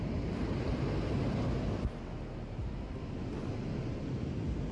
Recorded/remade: recorded